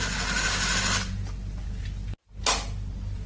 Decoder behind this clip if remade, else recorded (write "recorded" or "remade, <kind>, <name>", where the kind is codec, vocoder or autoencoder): recorded